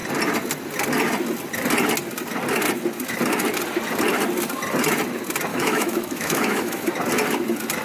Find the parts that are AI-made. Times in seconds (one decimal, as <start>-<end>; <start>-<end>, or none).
5.5-6.9

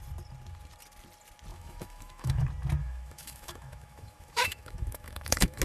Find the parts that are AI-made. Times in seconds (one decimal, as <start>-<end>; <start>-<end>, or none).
1.5-2.4; 2.8-5.6